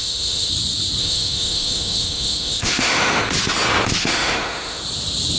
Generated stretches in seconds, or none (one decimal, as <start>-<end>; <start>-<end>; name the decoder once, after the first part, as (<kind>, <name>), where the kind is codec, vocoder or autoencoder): 0.0-0.5 (autoencoder, DAC-VAE); 1.0-3.2; 4.0-4.8